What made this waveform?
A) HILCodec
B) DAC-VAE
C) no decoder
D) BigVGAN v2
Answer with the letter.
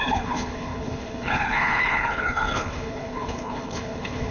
A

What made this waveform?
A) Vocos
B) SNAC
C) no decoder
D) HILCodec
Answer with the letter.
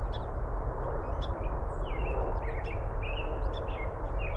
C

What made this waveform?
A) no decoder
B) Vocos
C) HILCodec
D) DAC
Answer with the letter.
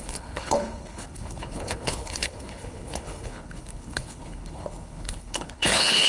C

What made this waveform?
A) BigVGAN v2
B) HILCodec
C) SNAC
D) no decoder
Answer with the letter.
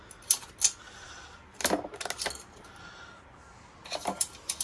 D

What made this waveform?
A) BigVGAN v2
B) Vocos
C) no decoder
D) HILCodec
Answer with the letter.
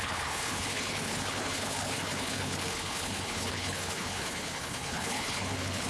D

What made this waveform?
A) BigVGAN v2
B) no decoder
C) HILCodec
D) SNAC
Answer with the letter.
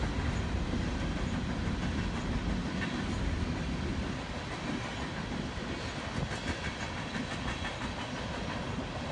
B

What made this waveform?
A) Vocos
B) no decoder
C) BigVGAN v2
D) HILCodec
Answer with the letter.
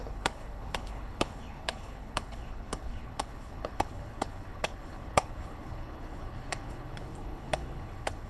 D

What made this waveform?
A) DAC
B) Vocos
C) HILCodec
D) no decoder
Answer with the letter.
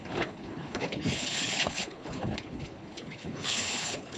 C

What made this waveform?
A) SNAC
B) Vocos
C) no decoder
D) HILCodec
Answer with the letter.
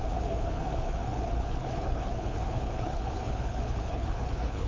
D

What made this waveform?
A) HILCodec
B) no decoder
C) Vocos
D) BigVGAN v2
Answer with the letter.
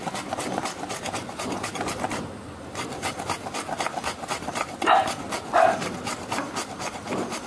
B